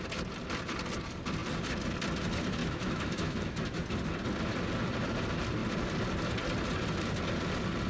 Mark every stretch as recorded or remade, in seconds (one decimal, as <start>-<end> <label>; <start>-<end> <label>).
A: 0.0-2.6 recorded; 2.6-3.8 remade; 3.8-7.9 recorded